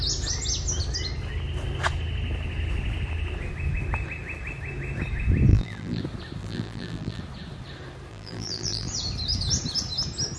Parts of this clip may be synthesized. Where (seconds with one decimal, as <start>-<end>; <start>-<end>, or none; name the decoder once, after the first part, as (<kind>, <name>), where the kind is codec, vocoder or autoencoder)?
5.5-6.0 (vocoder, BigVGAN v2); 6.4-7.2; 8.1-8.9